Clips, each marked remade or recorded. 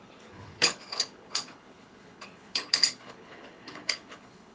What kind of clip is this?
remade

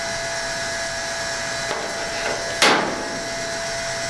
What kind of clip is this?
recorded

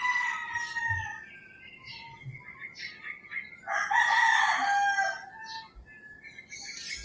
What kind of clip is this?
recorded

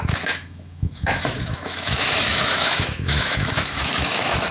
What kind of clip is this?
remade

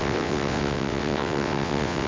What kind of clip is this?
remade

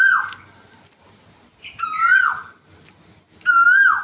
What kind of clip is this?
recorded